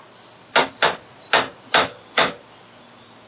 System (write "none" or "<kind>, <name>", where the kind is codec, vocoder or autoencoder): none